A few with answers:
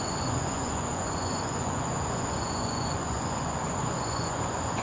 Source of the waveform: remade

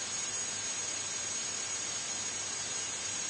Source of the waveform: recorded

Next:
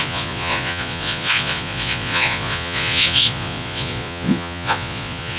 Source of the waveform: remade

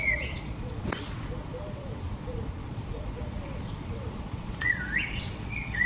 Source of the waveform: remade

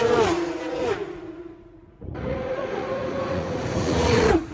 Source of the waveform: remade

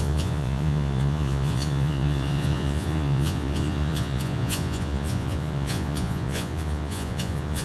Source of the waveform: remade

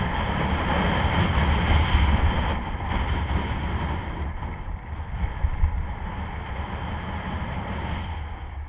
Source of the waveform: recorded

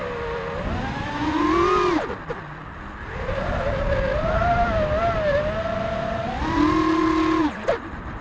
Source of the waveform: recorded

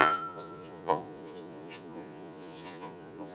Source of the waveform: remade